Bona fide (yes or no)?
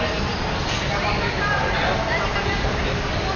yes